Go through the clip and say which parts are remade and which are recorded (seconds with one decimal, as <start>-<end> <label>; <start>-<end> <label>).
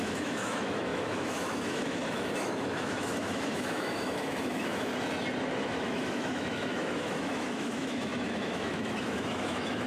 0.0-4.9 remade; 4.9-5.6 recorded; 5.6-9.9 remade